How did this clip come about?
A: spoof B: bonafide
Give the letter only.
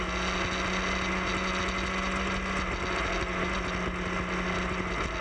B